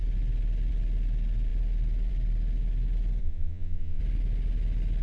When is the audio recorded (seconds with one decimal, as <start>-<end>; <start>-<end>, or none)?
0.0-3.2; 4.0-5.0